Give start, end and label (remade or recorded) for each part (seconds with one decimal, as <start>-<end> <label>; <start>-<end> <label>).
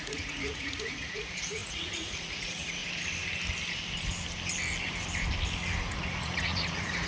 0.0-2.8 remade; 2.8-5.9 recorded; 5.9-7.1 remade